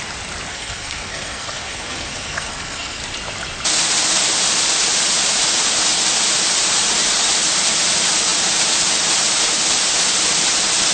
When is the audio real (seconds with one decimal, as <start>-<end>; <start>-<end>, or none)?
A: 0.0-0.5; 3.0-10.9